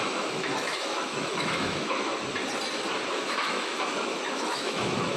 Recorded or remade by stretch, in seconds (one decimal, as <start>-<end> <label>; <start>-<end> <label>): 0.0-2.1 remade; 2.1-3.1 recorded; 3.1-5.2 remade